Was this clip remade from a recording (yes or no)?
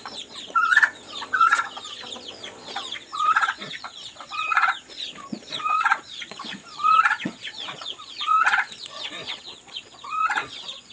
yes